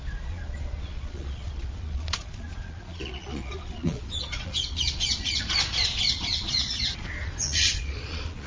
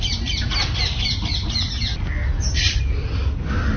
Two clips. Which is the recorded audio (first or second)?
second